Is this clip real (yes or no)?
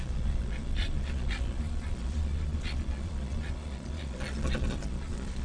no